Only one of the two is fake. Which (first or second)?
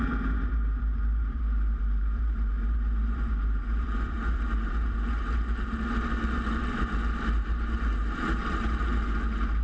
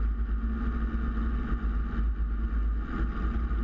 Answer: first